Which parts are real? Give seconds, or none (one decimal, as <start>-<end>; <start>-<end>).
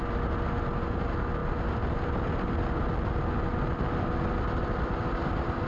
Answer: 0.0-5.7